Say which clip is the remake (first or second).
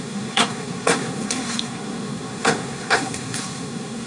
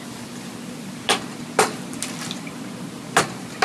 first